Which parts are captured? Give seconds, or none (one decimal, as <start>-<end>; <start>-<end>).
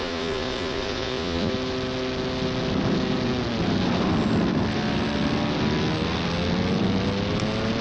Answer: 1.5-7.8